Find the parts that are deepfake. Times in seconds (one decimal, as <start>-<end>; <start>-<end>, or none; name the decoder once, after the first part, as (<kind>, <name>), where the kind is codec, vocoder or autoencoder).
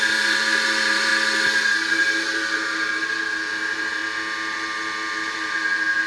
0.0-1.1 (vocoder, BigVGAN v2); 1.9-4.0; 5.1-6.1